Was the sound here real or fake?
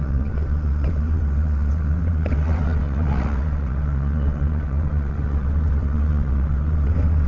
fake